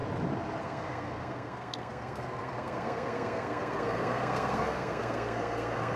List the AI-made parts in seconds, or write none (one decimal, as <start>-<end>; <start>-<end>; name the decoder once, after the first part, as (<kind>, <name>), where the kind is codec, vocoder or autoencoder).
0.6-6.0 (codec, SNAC)